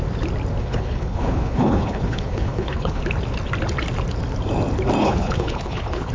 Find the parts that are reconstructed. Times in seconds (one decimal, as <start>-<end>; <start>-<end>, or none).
0.6-3.0; 5.0-6.1